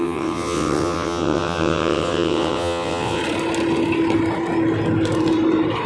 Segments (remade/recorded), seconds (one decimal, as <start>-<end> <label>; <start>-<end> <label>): 0.0-3.2 remade; 3.2-5.9 recorded